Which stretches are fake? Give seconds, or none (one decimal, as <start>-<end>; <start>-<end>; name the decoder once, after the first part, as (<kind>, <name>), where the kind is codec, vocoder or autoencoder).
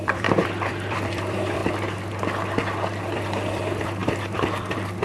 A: 0.0-1.6 (vocoder, BigVGAN v2); 3.0-5.0